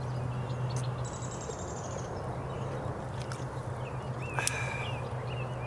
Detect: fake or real real